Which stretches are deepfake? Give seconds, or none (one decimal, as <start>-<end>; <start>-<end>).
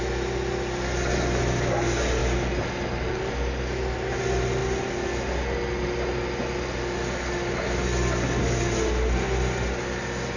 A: none